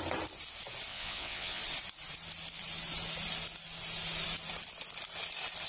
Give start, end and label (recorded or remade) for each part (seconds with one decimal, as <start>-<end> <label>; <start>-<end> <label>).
0.0-0.9 recorded; 0.9-1.6 remade; 1.6-5.7 recorded